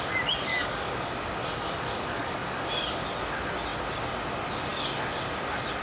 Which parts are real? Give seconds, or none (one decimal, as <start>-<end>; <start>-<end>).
0.0-0.5; 1.1-1.5; 3.0-5.8